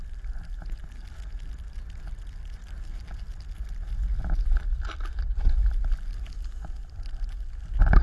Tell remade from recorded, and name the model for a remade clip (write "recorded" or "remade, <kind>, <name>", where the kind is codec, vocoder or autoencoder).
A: recorded